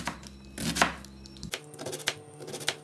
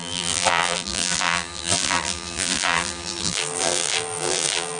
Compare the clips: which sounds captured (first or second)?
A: first